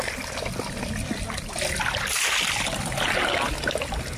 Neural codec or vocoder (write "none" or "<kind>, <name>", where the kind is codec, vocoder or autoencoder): none